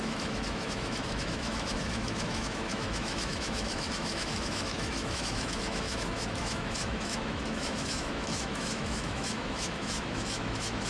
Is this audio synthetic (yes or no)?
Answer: yes